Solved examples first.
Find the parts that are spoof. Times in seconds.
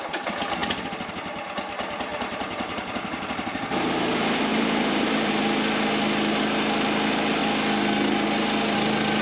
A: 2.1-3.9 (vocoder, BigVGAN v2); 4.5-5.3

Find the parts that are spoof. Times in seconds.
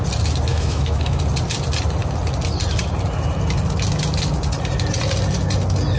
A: 0.5-1.2 (autoencoder, DAC-VAE)